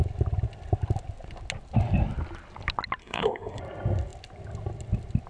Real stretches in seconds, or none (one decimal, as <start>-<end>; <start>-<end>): 0.0-3.0; 3.6-5.3